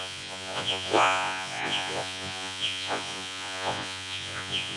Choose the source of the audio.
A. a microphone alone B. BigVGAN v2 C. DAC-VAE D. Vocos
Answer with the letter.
D